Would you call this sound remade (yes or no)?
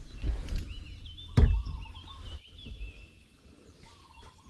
no